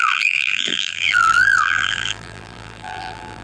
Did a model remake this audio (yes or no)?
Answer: yes